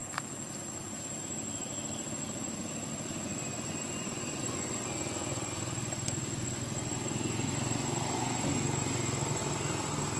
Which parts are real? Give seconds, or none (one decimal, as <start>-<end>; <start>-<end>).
0.0-3.2; 9.4-10.2